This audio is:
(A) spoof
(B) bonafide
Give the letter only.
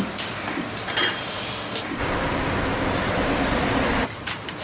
B